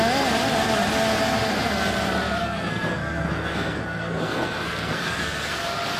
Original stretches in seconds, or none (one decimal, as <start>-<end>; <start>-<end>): 0.0-2.4; 5.6-6.0